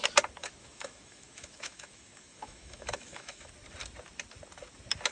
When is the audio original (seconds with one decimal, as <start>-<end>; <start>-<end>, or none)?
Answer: 0.0-0.4; 3.5-5.1